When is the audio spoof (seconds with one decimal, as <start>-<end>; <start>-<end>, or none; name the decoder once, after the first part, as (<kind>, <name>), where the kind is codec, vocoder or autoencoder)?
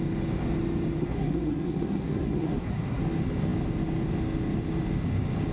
1.0-3.0 (codec, SNAC)